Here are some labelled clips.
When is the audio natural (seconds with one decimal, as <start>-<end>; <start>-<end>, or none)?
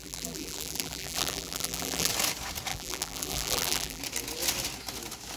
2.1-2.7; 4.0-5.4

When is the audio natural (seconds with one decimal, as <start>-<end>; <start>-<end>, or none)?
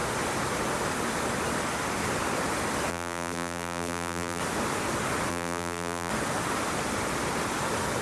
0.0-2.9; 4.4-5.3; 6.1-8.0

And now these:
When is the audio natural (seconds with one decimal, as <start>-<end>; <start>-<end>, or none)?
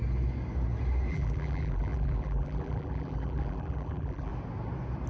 0.0-1.1; 4.3-5.1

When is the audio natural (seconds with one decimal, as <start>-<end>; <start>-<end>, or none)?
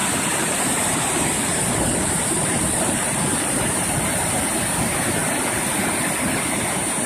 4.3-5.2; 5.7-7.1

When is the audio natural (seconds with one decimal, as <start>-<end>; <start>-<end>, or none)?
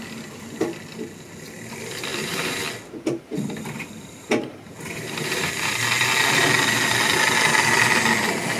0.0-2.1; 2.6-3.3; 5.8-8.6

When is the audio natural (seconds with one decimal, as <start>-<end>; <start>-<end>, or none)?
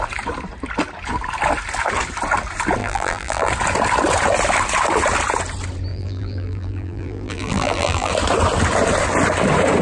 0.0-2.8; 3.5-5.9; 8.1-9.8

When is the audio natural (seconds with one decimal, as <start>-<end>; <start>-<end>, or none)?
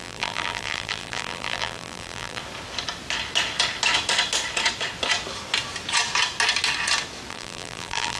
2.4-7.3